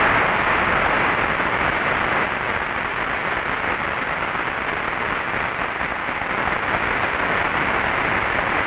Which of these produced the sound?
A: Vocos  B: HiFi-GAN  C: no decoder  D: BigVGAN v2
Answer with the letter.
C